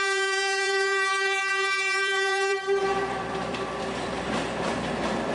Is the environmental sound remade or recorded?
remade